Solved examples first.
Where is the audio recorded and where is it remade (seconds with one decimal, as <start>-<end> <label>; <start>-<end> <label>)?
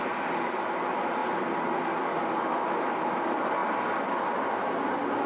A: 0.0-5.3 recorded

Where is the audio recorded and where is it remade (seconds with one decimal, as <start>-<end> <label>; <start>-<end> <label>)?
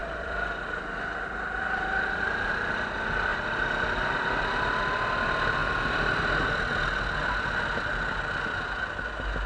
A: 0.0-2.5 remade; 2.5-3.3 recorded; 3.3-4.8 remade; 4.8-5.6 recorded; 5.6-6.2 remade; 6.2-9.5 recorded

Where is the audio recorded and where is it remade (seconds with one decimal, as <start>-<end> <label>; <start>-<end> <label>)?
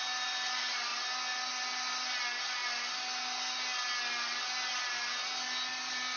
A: 0.0-6.2 recorded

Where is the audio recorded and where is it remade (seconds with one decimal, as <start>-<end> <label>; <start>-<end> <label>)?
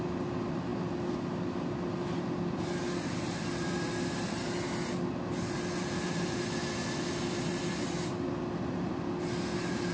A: 0.0-9.9 recorded